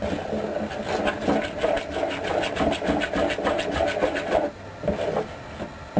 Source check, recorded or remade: recorded